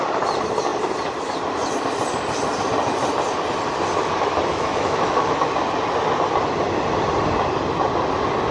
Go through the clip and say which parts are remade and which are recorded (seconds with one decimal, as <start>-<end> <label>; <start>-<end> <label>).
0.0-4.5 recorded; 4.5-5.5 remade; 5.5-8.5 recorded